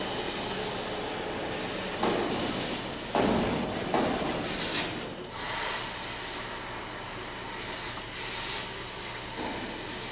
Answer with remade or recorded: recorded